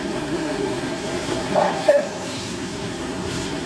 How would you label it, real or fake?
fake